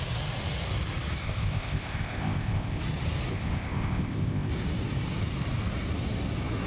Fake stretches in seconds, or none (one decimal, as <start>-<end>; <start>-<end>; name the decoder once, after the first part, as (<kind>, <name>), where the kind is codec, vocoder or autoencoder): 1.2-2.8 (codec, ZipCodec); 3.3-4.5